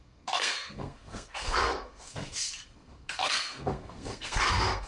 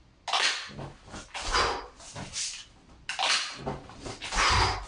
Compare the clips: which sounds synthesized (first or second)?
first